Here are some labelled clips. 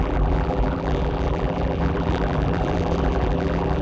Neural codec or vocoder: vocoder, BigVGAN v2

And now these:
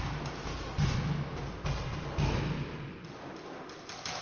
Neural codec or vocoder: none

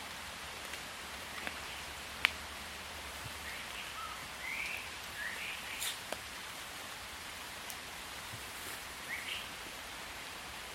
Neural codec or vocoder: vocoder, BigVGAN v2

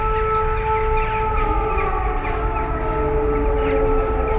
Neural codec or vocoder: none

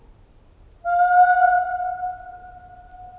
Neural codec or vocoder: none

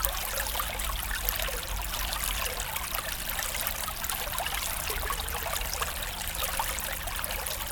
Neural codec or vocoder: none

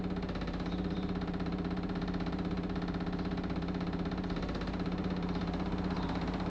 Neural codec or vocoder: vocoder, BigVGAN v2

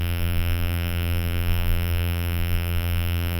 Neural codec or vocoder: vocoder, BigVGAN v2